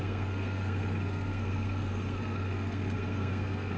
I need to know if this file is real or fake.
fake